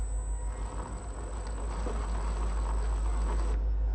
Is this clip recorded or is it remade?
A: recorded